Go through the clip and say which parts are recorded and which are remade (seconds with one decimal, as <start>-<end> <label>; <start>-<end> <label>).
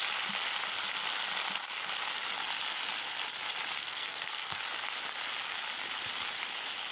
0.0-3.8 recorded; 3.8-4.6 remade; 4.6-6.9 recorded